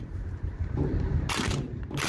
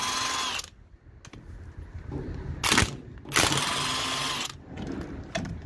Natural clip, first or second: second